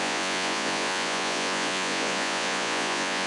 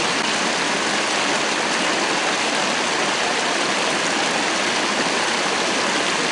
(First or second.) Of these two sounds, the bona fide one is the second